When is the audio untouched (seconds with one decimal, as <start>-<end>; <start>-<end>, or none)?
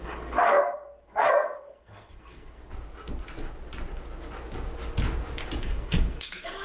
2.6-5.6